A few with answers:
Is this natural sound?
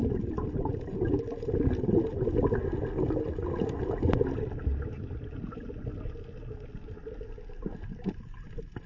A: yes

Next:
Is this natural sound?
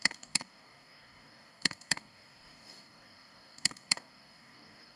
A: no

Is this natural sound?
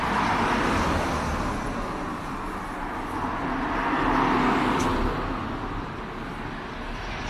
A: yes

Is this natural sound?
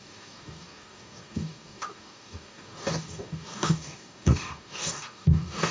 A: no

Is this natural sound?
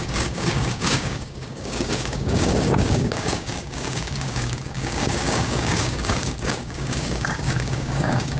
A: no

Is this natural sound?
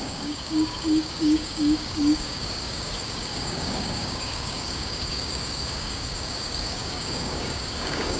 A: no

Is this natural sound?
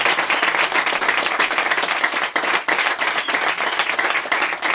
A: yes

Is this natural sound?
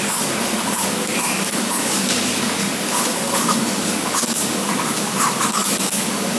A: no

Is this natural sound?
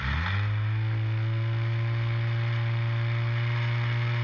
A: yes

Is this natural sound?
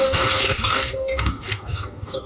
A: no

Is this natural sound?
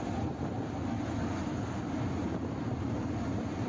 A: yes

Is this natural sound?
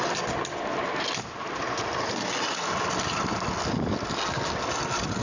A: yes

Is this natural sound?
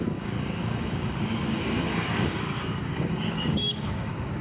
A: no